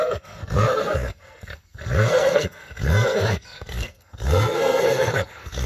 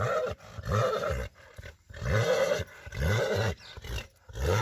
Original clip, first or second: second